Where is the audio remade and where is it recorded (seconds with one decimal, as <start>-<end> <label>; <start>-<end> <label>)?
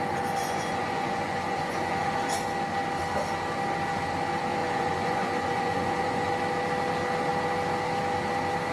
0.0-0.4 recorded; 0.4-2.1 remade; 2.1-4.6 recorded; 4.6-6.3 remade; 6.3-8.7 recorded